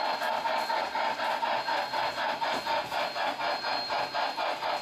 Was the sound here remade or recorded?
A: recorded